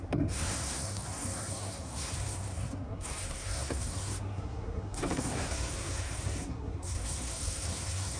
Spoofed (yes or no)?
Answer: yes